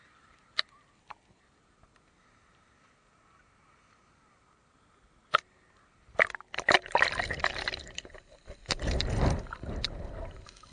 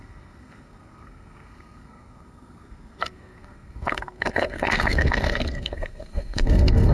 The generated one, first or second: second